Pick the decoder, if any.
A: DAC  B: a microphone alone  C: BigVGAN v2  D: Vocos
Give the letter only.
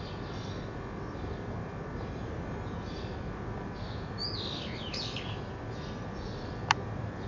B